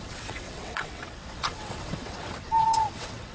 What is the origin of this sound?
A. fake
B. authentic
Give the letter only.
A